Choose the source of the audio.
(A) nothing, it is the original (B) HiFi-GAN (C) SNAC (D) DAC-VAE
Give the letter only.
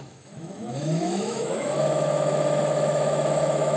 D